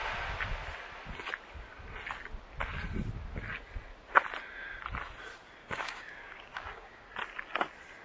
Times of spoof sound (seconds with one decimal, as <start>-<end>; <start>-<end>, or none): 5.6-7.1